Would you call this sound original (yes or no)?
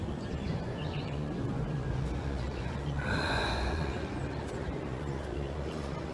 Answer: no